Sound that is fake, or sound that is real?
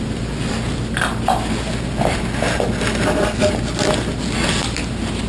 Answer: real